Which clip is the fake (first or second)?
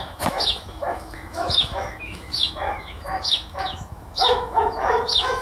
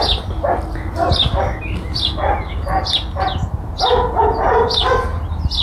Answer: first